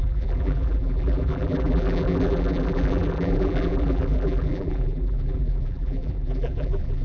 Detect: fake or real fake